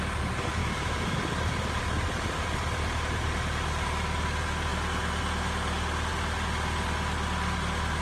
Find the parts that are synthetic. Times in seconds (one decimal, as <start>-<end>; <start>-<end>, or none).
0.6-1.2